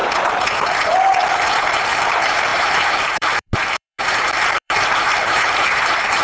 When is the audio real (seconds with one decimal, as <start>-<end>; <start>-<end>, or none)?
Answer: 0.0-1.8